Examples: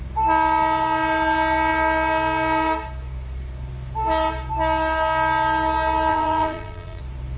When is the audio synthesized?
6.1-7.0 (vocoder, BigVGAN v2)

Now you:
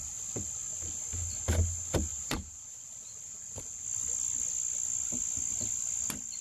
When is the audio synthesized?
2.1-3.6 (vocoder, BigVGAN v2)

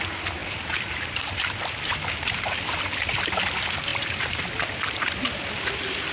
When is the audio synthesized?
0.4-2.8 (vocoder, BigVGAN v2); 3.9-5.2